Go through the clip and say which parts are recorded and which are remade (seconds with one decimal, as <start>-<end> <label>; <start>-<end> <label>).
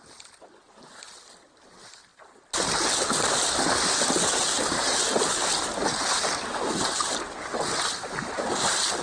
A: 0.0-9.0 recorded